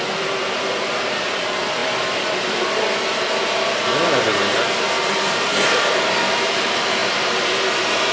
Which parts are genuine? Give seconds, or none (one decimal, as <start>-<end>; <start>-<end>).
none